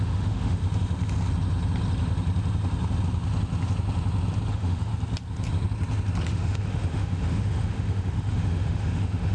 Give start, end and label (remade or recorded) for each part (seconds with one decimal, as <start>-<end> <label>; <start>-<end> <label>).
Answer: 0.0-0.6 remade; 0.6-4.5 recorded; 4.5-4.9 remade; 4.9-6.3 recorded; 6.3-9.3 remade